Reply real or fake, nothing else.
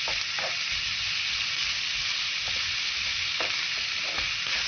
real